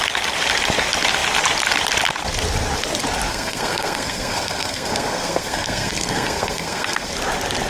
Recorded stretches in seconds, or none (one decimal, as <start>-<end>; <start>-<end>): 0.0-3.3; 7.1-7.7